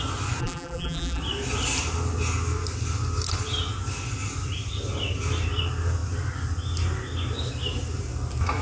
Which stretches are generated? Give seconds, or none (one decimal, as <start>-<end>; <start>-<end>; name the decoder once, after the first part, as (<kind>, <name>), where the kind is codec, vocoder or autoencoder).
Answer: 0.4-1.2 (vocoder, BigVGAN v2)